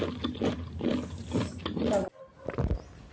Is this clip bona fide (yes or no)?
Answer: yes